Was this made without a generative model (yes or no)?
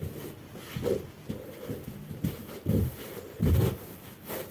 yes